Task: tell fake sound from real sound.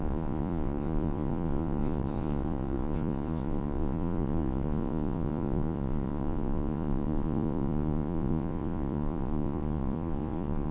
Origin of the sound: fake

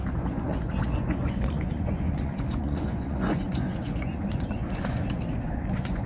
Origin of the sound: fake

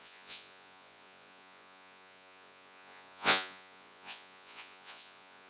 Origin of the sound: fake